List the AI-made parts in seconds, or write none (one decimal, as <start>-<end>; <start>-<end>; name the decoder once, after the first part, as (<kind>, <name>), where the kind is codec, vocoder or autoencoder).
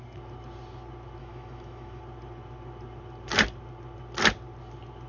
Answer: 1.2-2.0 (autoencoder, DAC-VAE)